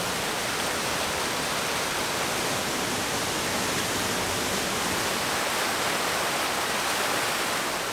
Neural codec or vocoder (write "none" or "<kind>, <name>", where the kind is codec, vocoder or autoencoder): none